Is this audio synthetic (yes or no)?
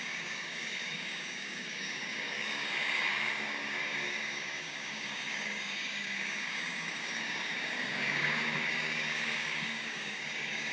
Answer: yes